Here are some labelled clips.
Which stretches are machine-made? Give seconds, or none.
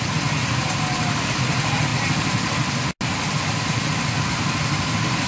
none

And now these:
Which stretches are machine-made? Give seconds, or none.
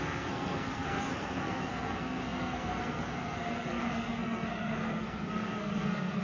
0.0-6.2 (codec, SNAC)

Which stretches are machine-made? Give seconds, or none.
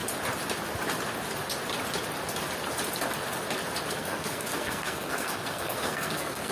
3.9-6.5 (codec, SNAC)